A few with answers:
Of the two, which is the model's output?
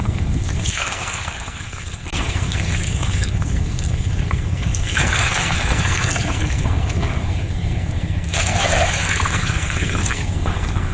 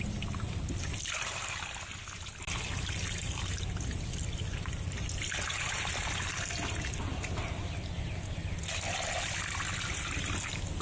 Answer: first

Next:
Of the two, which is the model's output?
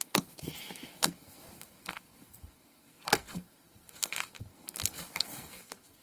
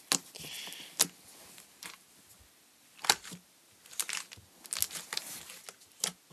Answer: first